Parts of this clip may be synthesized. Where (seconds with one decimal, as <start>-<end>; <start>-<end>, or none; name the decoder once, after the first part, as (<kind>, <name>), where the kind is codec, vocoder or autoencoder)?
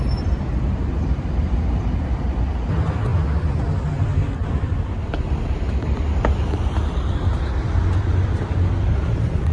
0.0-3.1 (vocoder, BigVGAN v2); 4.0-9.5